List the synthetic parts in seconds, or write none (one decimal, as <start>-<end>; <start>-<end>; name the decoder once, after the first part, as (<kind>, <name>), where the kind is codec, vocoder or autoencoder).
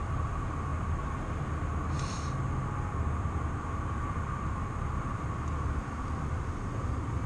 none